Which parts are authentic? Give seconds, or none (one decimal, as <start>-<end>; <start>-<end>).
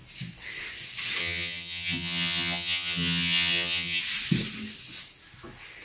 0.0-1.2; 4.0-5.8